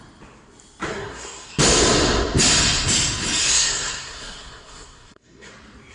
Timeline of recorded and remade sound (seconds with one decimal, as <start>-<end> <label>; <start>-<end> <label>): 0.0-0.9 recorded; 0.9-1.5 remade; 1.5-3.4 recorded; 3.4-5.5 remade; 5.5-5.9 recorded